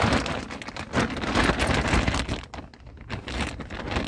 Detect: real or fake real